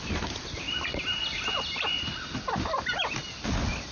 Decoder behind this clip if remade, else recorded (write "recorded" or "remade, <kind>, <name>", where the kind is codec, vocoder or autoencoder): recorded